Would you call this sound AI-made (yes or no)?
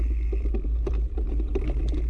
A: no